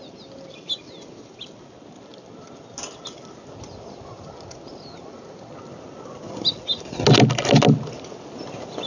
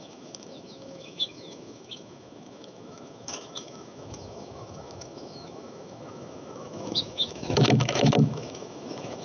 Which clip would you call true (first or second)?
first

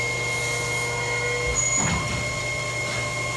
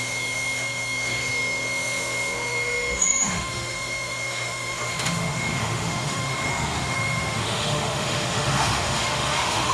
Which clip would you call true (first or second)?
first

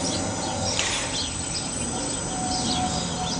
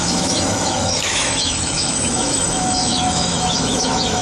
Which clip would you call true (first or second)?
first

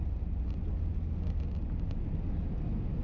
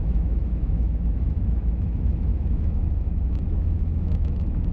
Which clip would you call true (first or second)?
first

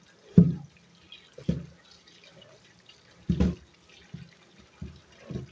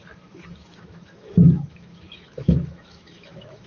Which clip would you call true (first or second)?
first